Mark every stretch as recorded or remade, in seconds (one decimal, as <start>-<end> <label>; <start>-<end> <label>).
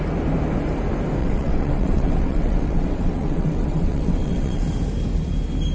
0.0-1.2 recorded; 1.2-4.6 remade; 4.6-5.7 recorded